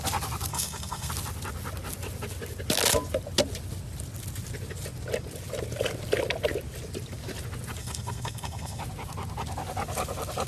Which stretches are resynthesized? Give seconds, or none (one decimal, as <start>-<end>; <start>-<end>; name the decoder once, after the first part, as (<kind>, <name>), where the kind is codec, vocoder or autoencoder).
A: 0.5-1.1 (codec, SNAC); 7.8-8.8